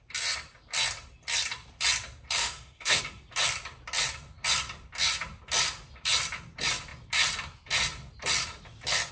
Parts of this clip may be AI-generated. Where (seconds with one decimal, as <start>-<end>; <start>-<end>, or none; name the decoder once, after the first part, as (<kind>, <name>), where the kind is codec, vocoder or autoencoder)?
2.4-3.0 (autoencoder, DAC-VAE)